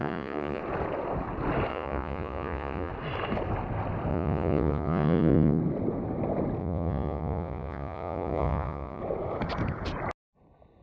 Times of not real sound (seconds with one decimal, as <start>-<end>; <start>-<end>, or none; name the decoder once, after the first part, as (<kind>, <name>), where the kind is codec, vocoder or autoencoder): 0.0-0.6 (vocoder, Vocos); 1.7-2.9; 4.1-5.6; 6.6-9.0